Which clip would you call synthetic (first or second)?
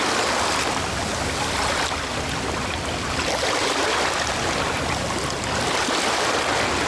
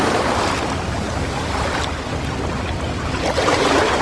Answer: second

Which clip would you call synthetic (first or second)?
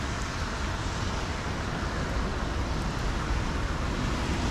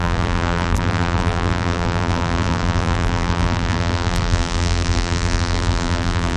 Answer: second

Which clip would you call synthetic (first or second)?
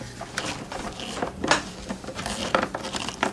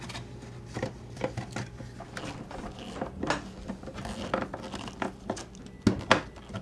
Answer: first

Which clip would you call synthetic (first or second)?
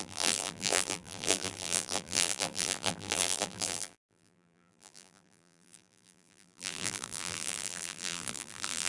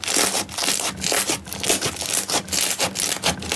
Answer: first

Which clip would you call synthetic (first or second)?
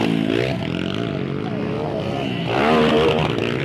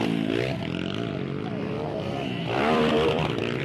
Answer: second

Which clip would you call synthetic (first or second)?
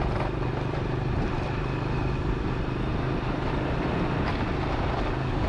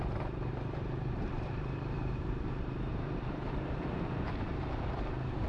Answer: second